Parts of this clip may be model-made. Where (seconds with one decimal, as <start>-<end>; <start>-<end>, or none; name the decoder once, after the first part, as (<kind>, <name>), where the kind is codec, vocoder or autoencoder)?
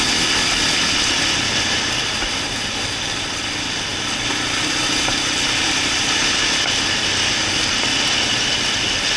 none